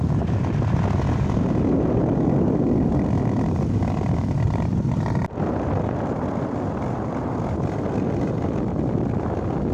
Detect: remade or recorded recorded